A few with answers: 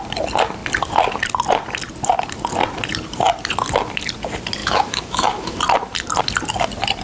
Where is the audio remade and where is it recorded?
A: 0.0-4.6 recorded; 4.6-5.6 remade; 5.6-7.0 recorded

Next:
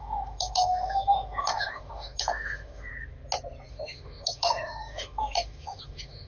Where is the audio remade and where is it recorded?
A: 0.0-2.9 remade; 2.9-3.7 recorded; 3.7-6.3 remade